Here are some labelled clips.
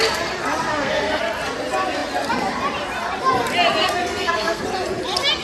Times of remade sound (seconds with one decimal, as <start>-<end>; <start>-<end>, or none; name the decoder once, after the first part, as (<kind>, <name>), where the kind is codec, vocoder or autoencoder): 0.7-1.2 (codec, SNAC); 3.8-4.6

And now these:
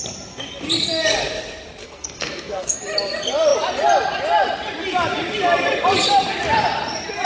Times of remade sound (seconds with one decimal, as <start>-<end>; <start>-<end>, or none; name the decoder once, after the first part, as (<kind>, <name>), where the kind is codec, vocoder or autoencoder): 1.8-2.8 (codec, SNAC)

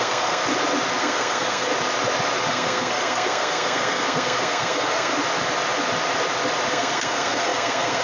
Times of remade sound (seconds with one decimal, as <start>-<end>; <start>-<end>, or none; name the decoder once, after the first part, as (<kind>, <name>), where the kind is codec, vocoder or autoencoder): 0.0-0.4 (codec, SNAC); 1.0-1.7; 2.5-5.1; 6.7-8.0

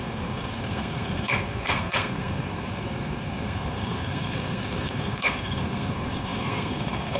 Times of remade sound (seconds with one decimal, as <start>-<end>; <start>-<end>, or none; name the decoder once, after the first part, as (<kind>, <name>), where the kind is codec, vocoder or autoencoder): 0.0-7.2 (codec, SNAC)